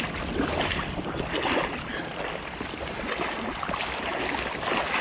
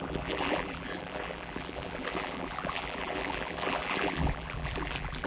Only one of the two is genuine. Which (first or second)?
first